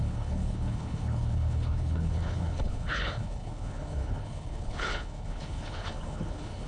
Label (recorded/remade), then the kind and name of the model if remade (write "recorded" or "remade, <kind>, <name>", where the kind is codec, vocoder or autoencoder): remade, codec, HILCodec